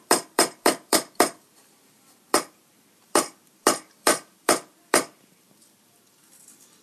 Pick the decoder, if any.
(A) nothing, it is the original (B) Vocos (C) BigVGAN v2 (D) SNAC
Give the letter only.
C